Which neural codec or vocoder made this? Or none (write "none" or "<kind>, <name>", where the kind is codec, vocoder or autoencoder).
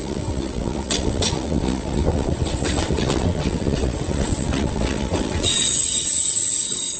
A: vocoder, WaveNeXt